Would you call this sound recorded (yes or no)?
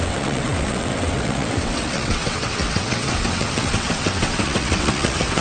no